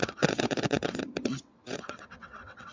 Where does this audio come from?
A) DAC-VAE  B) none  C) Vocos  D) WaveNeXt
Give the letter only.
D